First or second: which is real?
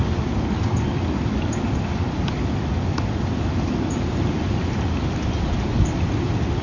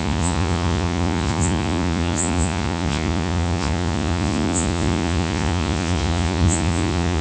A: first